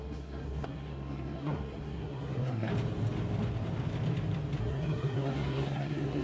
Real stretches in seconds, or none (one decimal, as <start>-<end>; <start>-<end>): 2.7-4.6